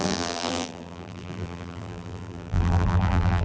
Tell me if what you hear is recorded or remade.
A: remade